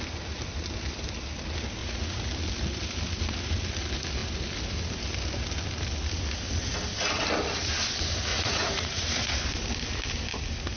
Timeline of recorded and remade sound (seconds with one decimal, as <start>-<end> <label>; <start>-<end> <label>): 0.0-1.8 recorded; 1.8-2.3 remade; 2.3-8.3 recorded; 8.3-9.3 remade; 9.3-10.8 recorded